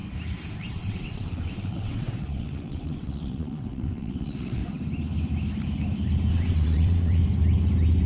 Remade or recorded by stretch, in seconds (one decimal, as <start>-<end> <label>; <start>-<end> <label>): 0.0-0.7 recorded; 0.7-4.6 remade; 4.6-6.3 recorded; 6.3-7.2 remade; 7.2-8.1 recorded